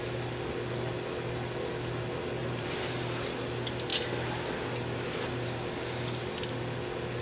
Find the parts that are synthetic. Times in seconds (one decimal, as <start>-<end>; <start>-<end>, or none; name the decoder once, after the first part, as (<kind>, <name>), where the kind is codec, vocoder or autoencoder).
2.4-3.0 (vocoder, BigVGAN v2)